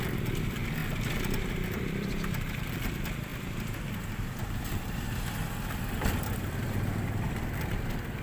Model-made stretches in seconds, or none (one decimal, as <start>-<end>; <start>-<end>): 0.0-3.3; 7.0-8.2